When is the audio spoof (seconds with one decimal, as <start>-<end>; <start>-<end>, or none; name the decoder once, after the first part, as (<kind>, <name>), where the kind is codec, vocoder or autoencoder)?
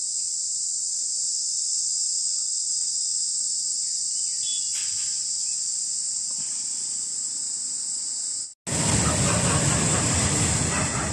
0.0-4.3 (vocoder, BigVGAN v2); 8.0-8.5; 10.0-11.1